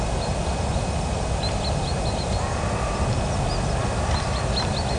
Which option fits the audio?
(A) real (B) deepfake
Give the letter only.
A